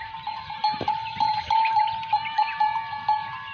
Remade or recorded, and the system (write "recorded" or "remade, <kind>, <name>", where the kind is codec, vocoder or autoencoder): recorded